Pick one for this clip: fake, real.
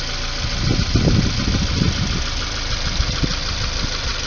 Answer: real